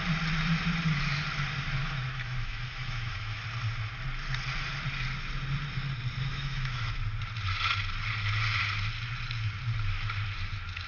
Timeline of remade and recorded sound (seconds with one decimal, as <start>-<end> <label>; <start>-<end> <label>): 0.0-1.8 recorded; 1.8-3.4 remade; 3.4-6.3 recorded; 6.3-7.0 remade; 7.0-10.9 recorded